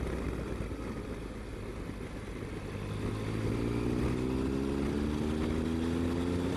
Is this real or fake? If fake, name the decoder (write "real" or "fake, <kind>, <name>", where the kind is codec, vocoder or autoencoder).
real